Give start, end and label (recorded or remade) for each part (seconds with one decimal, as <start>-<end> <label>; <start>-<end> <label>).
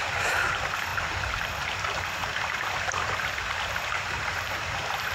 0.0-5.1 remade